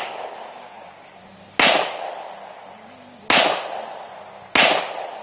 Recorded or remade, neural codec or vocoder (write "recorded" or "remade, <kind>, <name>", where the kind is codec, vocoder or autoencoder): recorded